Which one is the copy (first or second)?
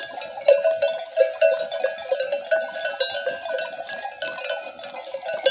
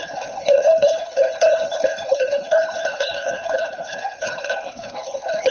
second